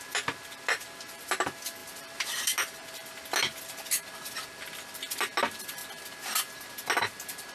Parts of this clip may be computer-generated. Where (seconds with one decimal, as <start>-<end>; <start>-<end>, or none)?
0.0-5.8